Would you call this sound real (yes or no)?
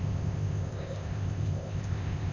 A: no